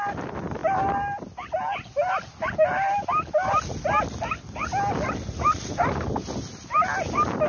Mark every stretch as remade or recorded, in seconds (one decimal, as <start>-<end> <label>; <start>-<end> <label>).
0.0-7.5 recorded